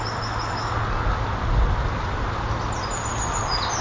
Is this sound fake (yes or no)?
no